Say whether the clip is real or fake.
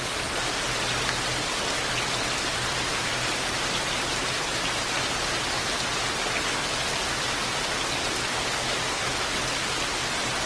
real